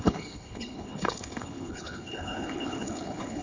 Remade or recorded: remade